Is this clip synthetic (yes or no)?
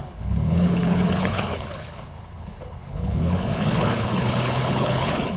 yes